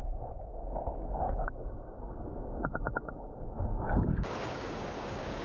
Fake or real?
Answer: fake